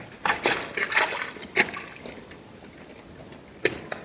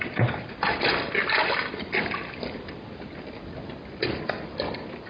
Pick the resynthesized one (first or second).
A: first